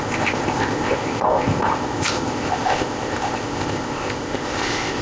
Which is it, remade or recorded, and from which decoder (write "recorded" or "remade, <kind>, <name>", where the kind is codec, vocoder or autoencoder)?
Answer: remade, codec, ZipCodec